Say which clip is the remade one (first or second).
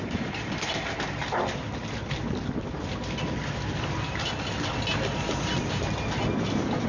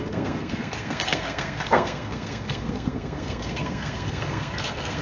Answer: second